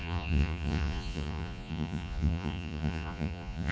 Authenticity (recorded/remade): remade